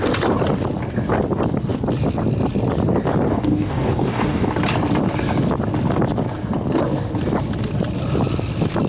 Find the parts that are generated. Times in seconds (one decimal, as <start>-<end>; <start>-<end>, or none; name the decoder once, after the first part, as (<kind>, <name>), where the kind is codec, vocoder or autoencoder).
3.3-4.5 (codec, DAC)